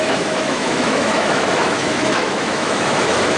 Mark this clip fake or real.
fake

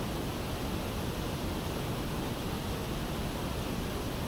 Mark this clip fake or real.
real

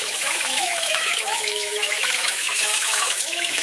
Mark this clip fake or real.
fake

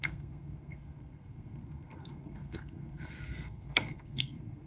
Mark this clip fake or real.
fake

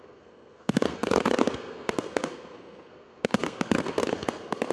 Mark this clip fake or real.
fake